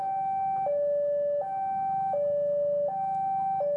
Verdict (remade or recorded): recorded